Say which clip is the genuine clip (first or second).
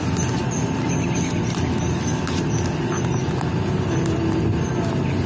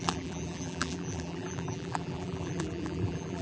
first